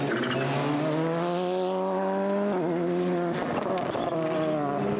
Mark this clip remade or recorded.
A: recorded